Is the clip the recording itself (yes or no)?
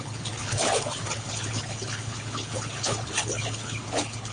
no